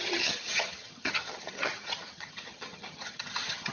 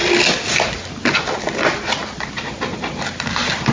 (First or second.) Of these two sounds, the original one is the second